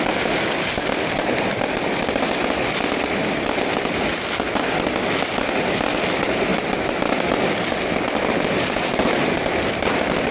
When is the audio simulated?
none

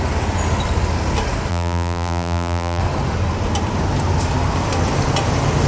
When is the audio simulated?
1.5-2.8 (vocoder, BigVGAN v2)

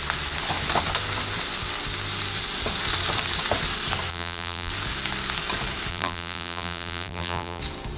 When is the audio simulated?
4.1-4.7 (vocoder, BigVGAN v2); 5.9-7.6

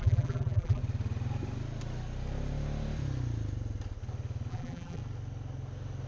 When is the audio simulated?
0.0-0.8 (vocoder, BigVGAN v2); 4.5-5.0

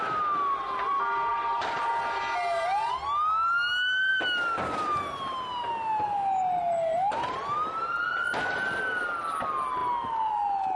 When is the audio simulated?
1.3-1.9 (vocoder, BigVGAN v2)

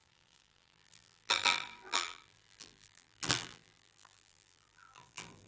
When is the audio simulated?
0.0-5.5 (vocoder, BigVGAN v2)

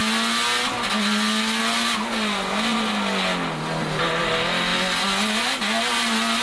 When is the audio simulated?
none

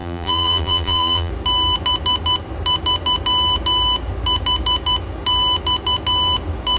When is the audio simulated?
0.0-1.3 (vocoder, BigVGAN v2)